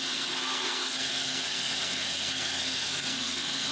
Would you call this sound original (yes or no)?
no